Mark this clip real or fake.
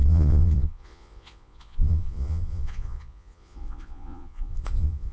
fake